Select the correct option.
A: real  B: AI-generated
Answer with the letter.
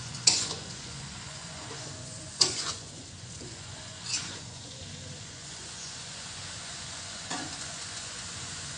B